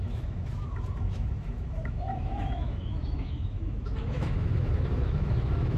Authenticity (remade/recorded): remade